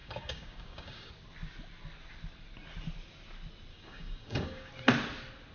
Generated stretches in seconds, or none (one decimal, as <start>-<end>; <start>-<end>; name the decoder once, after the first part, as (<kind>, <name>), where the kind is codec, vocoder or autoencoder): 0.0-1.1 (codec, DAC); 3.7-4.7